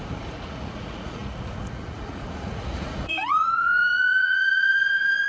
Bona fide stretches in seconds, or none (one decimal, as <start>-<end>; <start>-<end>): none